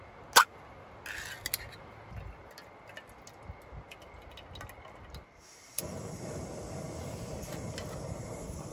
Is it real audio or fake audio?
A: real